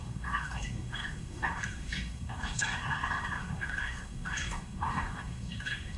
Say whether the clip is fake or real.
fake